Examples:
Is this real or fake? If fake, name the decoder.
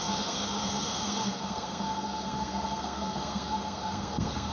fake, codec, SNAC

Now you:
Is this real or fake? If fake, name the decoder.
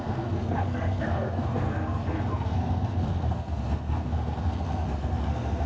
fake, codec, SNAC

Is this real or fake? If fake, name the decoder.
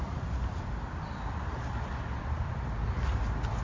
real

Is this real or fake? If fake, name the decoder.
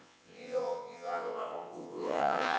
fake, vocoder, WaveNeXt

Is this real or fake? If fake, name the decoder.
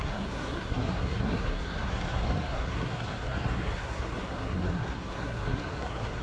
fake, codec, SNAC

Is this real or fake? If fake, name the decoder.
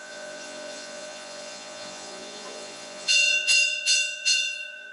fake, vocoder, Vocos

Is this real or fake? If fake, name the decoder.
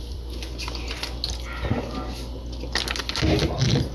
real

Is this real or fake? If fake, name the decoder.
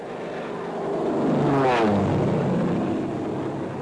real